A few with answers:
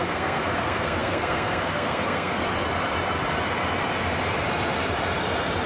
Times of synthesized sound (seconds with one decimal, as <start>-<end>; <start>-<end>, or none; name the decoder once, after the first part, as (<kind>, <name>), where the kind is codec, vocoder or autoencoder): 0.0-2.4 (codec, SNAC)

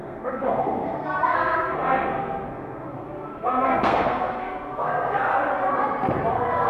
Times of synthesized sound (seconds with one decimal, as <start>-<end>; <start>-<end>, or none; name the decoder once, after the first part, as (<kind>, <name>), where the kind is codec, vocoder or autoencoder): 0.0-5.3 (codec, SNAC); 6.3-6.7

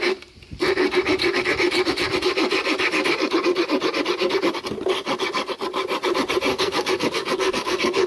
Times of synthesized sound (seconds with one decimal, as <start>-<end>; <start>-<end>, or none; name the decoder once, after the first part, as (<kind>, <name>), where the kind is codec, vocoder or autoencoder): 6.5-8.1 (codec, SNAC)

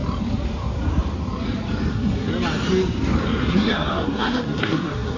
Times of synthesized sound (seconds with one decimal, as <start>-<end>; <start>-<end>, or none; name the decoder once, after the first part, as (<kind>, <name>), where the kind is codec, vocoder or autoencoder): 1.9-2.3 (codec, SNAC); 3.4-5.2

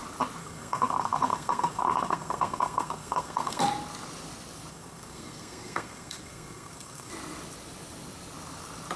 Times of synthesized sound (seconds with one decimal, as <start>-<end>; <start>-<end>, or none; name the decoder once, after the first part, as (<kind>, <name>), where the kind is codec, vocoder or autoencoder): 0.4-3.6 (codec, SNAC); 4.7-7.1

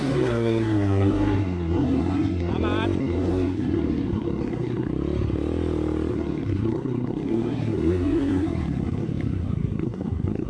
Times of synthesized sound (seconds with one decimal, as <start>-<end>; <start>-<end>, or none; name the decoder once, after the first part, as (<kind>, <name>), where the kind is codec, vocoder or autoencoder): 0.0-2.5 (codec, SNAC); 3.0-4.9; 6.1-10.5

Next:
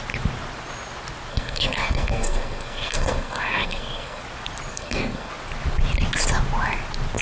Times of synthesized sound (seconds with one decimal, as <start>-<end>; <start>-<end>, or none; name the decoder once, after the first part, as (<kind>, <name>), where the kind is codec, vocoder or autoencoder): 1.3-4.2 (codec, SNAC); 4.7-5.3